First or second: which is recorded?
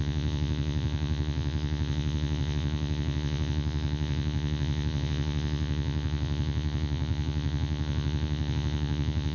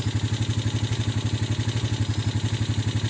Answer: second